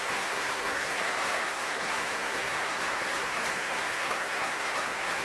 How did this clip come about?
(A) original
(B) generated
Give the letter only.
B